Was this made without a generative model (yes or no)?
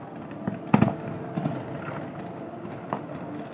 yes